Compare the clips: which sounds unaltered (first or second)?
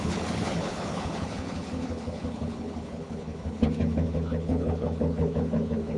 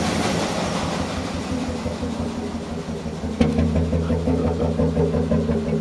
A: second